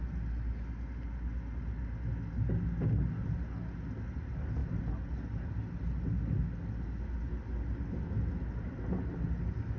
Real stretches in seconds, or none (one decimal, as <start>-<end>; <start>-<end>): 0.0-9.8